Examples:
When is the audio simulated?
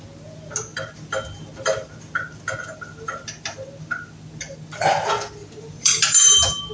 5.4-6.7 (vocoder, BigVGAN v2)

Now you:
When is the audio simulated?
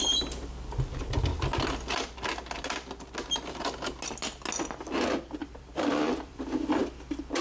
5.4-6.4 (vocoder, BigVGAN v2)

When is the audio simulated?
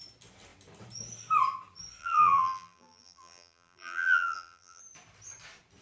2.0-4.8 (vocoder, BigVGAN v2)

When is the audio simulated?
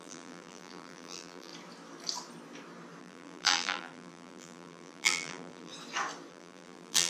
0.0-1.5 (vocoder, BigVGAN v2); 3.0-5.7; 6.3-7.1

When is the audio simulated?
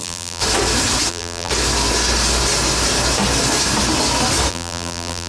0.0-0.4 (vocoder, BigVGAN v2); 1.1-1.5; 4.5-5.3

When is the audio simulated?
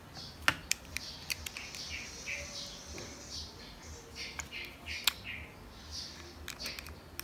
0.6-1.4 (vocoder, BigVGAN v2)